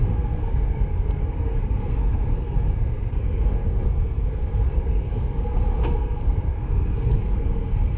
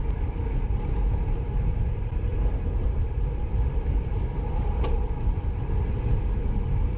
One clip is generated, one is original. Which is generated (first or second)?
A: first